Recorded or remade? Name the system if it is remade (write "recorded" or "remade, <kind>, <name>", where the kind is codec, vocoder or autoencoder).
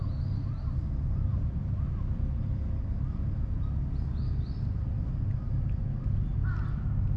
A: recorded